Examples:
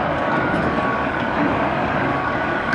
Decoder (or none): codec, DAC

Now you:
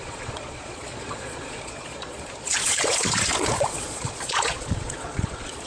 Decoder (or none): vocoder, Vocos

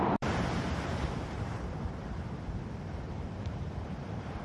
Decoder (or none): vocoder, BigVGAN v2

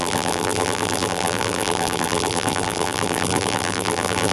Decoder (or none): vocoder, BigVGAN v2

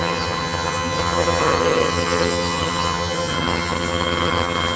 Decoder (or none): vocoder, HiFi-GAN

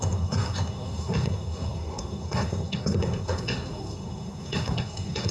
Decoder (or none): codec, SNAC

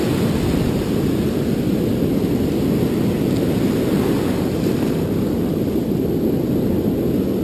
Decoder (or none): none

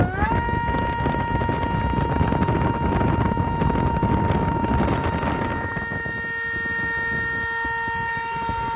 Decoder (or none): none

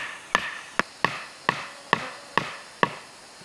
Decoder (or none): none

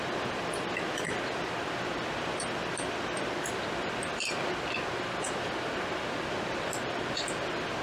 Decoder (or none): none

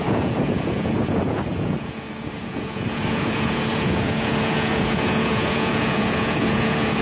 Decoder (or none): vocoder, Vocos